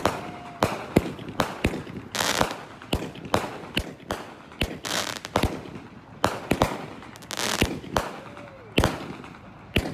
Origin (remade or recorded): recorded